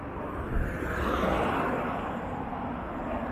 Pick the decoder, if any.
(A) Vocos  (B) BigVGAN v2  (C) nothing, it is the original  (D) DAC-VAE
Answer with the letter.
B